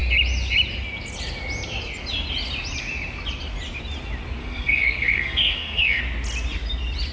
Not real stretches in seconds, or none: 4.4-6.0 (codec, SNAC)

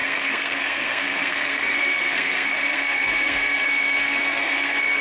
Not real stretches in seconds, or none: 0.0-5.0 (codec, SNAC)

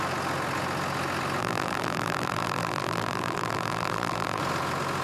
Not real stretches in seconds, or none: 1.4-4.4 (vocoder, BigVGAN v2)

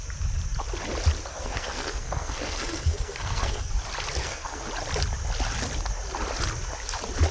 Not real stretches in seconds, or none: 1.3-3.7 (codec, SNAC); 4.2-4.7

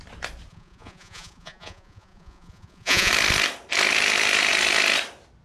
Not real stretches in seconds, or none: 0.5-3.1 (vocoder, Vocos)

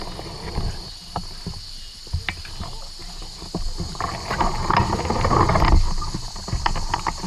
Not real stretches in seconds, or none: none

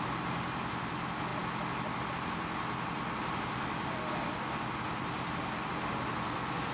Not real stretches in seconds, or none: none

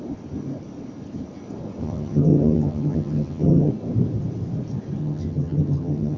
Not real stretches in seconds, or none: 1.8-3.7 (vocoder, HiFi-GAN); 5.0-6.2